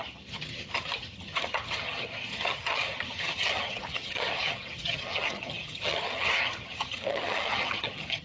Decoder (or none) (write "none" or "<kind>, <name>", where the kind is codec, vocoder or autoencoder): vocoder, HiFi-GAN